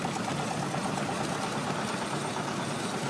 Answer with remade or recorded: recorded